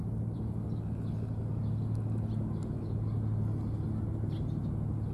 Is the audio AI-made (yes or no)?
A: no